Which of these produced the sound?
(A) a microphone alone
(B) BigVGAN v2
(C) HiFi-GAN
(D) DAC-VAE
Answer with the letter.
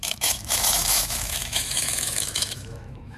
D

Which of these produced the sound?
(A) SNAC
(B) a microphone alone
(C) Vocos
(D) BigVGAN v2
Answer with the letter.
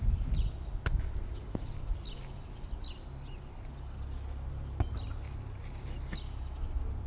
B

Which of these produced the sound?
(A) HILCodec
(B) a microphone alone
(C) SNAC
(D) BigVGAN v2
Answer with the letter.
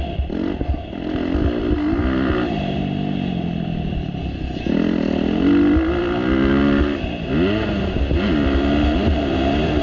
B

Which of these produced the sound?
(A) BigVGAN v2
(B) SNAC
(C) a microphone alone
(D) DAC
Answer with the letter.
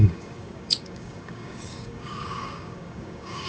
D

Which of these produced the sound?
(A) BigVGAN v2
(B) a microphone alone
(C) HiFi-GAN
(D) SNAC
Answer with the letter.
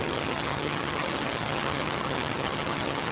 C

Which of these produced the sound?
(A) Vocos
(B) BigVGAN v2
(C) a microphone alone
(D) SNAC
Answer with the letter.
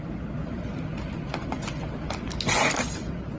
C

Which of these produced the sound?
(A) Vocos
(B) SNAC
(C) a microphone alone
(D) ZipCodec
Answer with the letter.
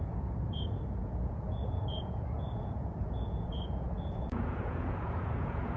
A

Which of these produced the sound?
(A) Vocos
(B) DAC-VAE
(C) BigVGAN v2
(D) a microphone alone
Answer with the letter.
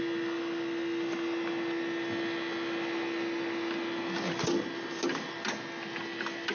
D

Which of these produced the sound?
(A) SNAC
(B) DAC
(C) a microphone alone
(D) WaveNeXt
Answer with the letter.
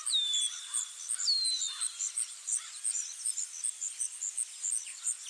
C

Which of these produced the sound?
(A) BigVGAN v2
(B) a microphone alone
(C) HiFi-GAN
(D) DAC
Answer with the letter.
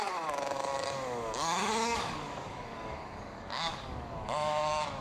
D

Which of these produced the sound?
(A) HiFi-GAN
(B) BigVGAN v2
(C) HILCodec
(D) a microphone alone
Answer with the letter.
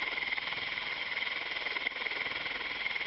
D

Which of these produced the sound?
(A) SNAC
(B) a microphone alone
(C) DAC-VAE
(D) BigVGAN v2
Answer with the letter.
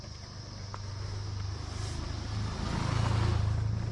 B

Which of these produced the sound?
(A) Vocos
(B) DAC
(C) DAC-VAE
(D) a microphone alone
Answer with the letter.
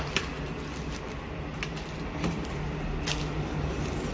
D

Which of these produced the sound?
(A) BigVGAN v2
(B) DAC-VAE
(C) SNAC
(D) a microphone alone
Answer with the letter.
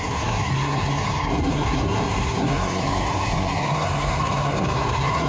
C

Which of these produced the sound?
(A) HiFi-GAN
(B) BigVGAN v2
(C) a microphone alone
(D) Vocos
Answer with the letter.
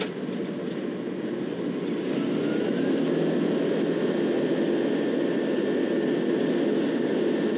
C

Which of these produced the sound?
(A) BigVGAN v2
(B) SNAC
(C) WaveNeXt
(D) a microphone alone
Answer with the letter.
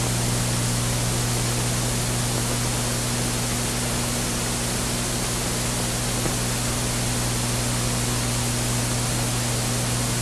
D